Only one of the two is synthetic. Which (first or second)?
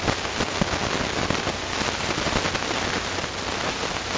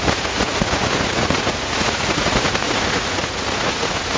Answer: second